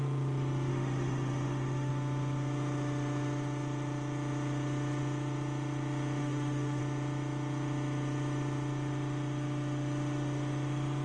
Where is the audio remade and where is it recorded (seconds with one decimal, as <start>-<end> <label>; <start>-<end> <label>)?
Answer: 0.0-0.7 recorded; 0.7-1.9 remade; 1.9-6.2 recorded; 6.2-6.8 remade; 6.8-11.0 recorded